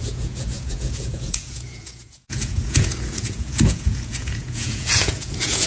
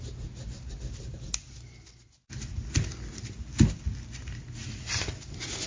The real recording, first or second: second